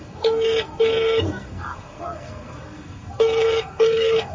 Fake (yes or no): yes